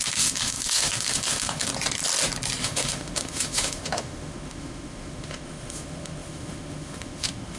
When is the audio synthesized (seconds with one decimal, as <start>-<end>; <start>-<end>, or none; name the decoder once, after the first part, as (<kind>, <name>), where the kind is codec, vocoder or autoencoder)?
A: 0.0-1.7 (autoencoder, DAC-VAE); 2.6-7.6